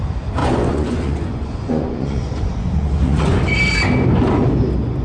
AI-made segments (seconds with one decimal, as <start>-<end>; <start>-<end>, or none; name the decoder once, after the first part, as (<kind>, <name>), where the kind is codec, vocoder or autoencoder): 0.4-3.4 (vocoder, Vocos)